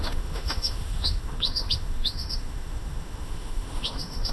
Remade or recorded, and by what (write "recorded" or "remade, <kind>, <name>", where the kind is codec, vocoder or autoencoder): remade, autoencoder, DAC-VAE